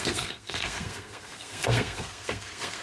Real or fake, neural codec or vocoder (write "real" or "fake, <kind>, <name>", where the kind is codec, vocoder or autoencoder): fake, codec, SNAC